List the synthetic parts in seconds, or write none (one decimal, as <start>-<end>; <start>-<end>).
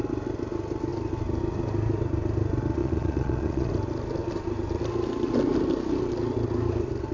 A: 2.8-3.7